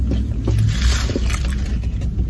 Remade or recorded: recorded